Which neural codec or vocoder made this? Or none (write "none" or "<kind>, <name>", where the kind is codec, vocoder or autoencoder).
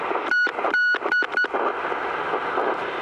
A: none